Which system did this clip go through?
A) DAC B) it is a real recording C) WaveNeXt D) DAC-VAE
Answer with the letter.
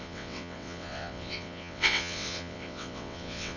C